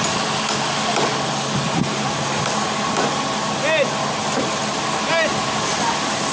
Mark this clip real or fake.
real